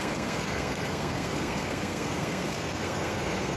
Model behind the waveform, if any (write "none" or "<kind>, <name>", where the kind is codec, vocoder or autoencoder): codec, SNAC